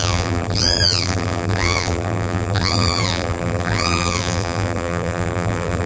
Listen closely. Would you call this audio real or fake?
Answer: fake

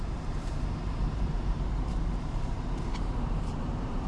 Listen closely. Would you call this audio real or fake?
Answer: fake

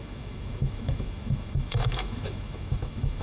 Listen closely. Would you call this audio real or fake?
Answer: fake